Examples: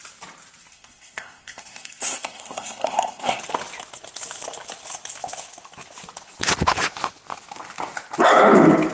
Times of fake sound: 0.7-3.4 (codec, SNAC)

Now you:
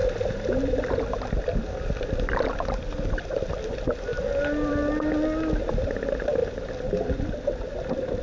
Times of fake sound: none